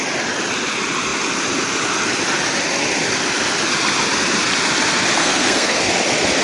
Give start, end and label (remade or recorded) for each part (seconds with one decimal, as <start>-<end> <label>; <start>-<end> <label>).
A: 0.0-5.2 recorded; 5.2-5.8 remade; 5.8-6.4 recorded